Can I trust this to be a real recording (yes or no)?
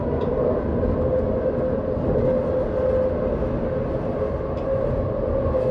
yes